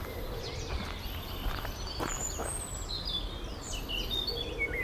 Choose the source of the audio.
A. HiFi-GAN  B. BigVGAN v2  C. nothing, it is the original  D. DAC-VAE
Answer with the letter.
C